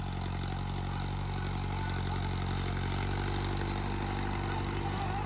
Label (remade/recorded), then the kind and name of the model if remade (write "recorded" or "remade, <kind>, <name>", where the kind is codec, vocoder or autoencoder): recorded